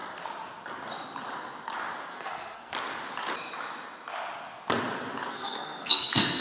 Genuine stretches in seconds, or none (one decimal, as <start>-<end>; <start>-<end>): 0.0-2.1; 2.7-5.3